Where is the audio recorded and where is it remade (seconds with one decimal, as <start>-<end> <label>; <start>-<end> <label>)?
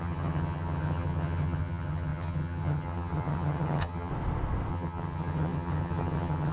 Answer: 0.0-4.1 remade; 4.1-4.7 recorded; 4.7-6.5 remade